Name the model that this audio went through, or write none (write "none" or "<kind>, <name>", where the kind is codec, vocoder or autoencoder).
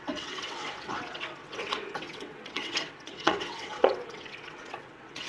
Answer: vocoder, WaveNeXt